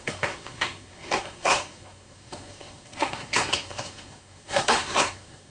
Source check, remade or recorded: remade